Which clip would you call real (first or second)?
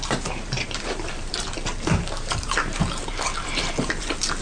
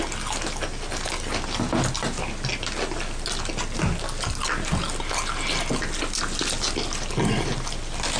second